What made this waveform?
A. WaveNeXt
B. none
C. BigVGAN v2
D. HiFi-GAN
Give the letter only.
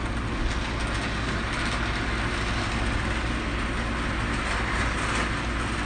B